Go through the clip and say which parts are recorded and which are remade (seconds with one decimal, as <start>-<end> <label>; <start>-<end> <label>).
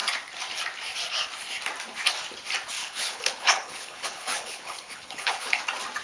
0.0-2.8 recorded; 2.8-5.6 remade; 5.6-6.0 recorded